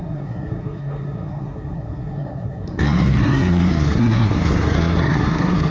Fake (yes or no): yes